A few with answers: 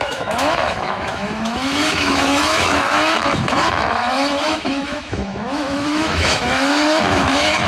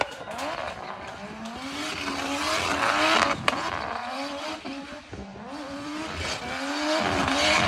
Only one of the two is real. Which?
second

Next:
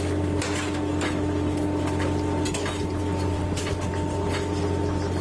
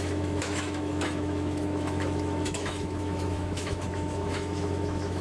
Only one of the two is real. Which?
first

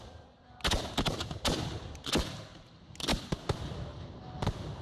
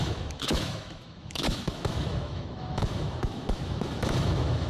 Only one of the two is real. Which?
first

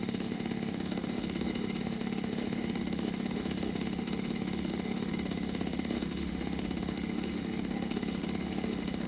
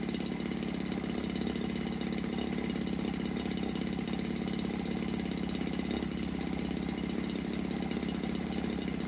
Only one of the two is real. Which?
second